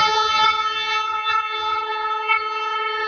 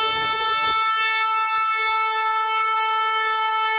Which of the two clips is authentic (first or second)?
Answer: second